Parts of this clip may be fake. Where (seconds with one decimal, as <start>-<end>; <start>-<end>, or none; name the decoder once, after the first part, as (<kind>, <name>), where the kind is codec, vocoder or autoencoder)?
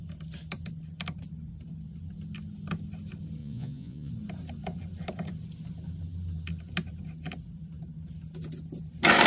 3.4-4.1 (vocoder, Vocos)